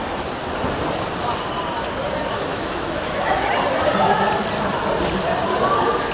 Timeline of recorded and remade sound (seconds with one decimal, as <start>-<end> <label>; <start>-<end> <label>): 0.0-2.5 recorded; 2.5-3.5 remade; 3.5-6.1 recorded